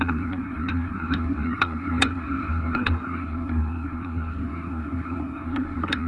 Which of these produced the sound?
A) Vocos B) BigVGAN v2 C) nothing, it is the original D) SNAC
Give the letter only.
D